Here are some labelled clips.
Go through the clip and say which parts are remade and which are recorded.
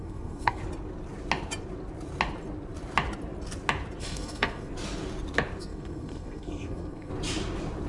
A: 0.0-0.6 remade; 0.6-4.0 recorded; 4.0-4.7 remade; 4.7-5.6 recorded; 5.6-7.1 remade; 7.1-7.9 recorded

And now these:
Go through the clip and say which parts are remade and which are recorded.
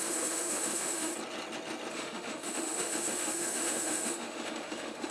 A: 0.0-1.1 remade; 1.1-1.9 recorded; 1.9-5.1 remade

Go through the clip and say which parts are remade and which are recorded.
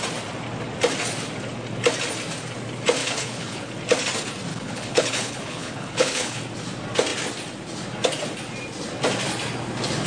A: 0.0-3.0 recorded; 3.0-3.7 remade; 3.7-4.5 recorded; 4.5-6.4 remade; 6.4-10.1 recorded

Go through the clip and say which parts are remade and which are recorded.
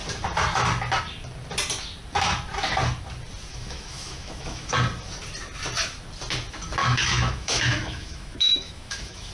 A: 0.0-3.5 recorded; 3.5-4.7 remade; 4.7-6.8 recorded; 6.8-9.3 remade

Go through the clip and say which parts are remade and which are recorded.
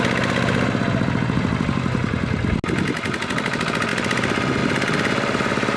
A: 0.0-5.8 recorded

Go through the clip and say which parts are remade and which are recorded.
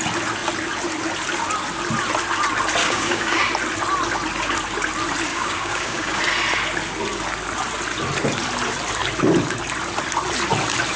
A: 0.0-2.8 recorded; 2.8-3.4 remade; 3.4-5.3 recorded; 5.3-6.2 remade; 6.2-11.0 recorded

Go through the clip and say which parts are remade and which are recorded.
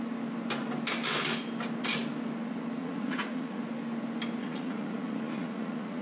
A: 0.0-2.8 recorded; 2.8-3.6 remade; 3.6-4.4 recorded; 4.4-6.0 remade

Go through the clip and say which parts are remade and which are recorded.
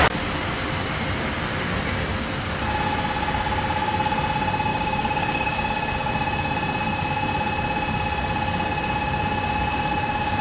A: 0.0-4.7 recorded; 4.7-6.1 remade; 6.1-10.4 recorded